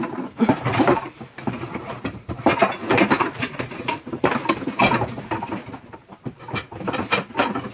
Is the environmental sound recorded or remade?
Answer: remade